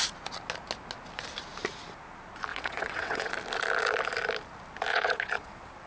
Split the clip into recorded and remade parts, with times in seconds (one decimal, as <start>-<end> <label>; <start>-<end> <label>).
0.0-2.5 recorded; 2.5-3.3 remade; 3.3-4.9 recorded; 4.9-5.9 remade